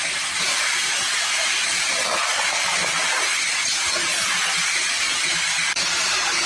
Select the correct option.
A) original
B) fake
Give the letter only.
A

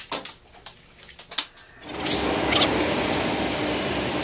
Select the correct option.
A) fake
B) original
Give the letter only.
B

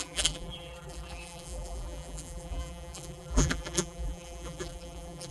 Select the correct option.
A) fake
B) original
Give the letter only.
A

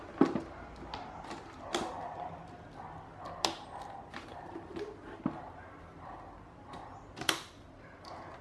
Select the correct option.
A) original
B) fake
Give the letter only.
A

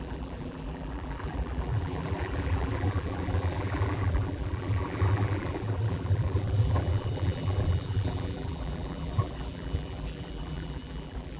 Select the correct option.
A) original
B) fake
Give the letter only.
B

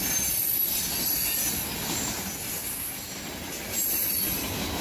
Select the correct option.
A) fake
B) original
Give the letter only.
B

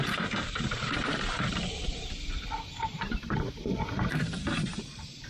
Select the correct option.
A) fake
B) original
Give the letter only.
A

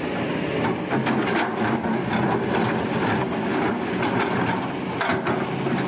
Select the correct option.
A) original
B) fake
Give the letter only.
A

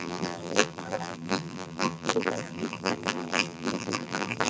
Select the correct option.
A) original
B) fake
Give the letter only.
B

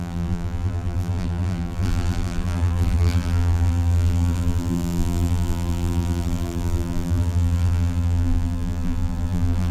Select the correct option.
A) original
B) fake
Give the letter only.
B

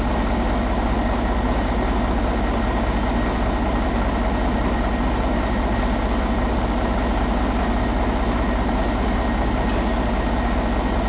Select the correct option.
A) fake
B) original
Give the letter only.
B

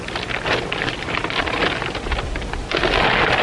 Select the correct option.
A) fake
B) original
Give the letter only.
B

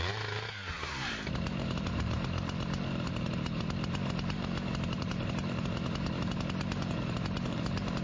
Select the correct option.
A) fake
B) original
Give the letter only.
A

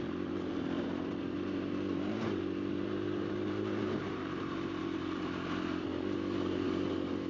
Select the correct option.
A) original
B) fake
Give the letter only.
B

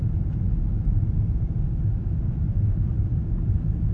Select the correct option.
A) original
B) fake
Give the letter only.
B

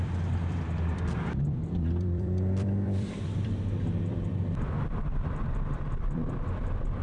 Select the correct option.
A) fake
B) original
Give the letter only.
A